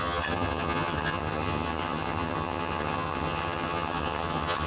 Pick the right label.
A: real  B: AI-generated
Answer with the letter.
B